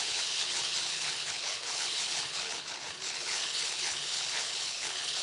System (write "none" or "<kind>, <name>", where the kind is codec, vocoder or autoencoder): codec, HILCodec